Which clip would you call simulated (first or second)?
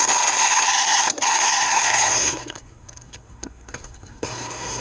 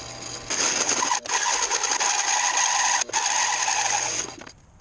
first